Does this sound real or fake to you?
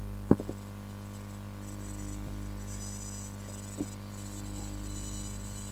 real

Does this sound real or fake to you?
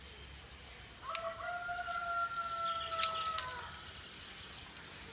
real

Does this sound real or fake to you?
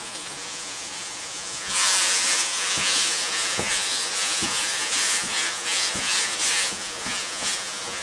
fake